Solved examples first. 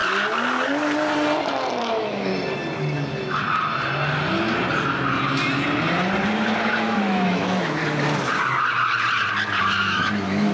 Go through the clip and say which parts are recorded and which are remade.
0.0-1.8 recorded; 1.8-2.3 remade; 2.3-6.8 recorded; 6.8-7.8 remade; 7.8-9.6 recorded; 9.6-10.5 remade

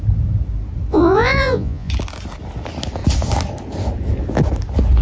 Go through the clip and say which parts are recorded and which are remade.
0.0-0.9 recorded; 0.9-1.9 remade; 1.9-5.0 recorded

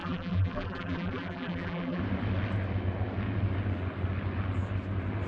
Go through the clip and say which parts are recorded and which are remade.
0.0-2.0 remade; 2.0-5.3 recorded

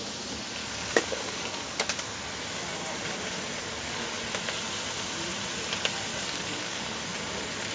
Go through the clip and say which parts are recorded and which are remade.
0.0-0.6 recorded; 0.6-1.8 remade; 1.8-3.6 recorded; 3.6-4.2 remade; 4.2-6.1 recorded; 6.1-6.8 remade; 6.8-7.7 recorded